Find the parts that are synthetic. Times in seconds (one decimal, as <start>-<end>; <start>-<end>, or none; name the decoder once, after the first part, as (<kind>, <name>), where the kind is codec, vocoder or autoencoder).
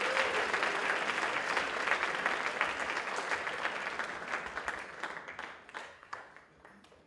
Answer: 5.8-6.3 (codec, SNAC)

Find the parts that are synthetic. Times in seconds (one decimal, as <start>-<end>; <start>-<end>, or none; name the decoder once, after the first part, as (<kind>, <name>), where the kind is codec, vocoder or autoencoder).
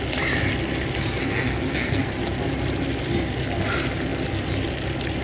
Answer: 1.2-2.1 (codec, SNAC)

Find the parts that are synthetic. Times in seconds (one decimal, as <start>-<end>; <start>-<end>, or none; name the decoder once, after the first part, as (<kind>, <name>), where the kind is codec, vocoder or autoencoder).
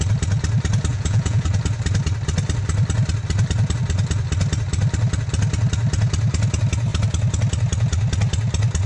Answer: 0.9-1.6 (vocoder, Vocos)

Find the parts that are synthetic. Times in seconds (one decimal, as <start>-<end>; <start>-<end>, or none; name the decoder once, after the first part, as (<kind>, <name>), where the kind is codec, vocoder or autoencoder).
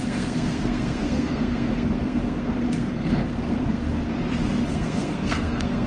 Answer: 0.0-4.1 (codec, SNAC); 4.7-5.9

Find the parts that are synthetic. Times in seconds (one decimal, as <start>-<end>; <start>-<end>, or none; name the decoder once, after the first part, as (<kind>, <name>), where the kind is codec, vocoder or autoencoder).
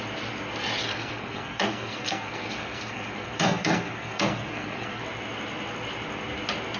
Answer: 0.9-5.0 (codec, SNAC)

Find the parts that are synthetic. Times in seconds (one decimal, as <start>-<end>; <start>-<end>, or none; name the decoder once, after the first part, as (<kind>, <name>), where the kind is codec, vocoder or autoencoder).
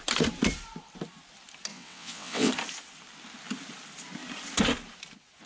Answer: 1.7-2.5 (vocoder, WaveNeXt)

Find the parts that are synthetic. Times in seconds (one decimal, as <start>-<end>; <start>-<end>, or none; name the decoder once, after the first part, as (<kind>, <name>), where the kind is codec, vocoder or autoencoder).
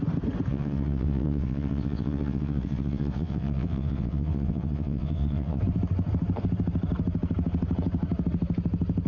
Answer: 0.5-5.6 (vocoder, WaveNeXt)